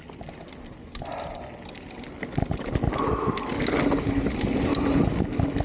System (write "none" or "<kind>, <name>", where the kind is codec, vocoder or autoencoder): none